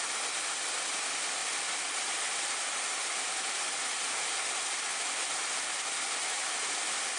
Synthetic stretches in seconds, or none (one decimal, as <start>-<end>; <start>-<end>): none